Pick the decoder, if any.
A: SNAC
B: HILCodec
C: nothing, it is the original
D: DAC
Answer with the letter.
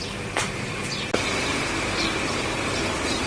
C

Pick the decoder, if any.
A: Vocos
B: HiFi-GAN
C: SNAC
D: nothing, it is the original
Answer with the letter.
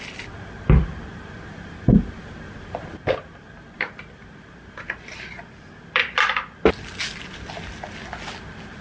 D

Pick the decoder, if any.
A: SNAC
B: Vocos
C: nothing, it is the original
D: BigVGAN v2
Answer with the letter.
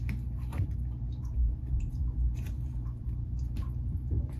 D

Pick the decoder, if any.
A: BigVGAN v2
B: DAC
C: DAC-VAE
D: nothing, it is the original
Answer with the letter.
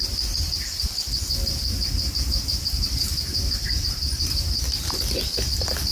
D